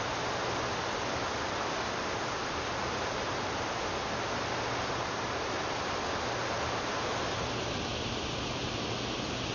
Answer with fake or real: real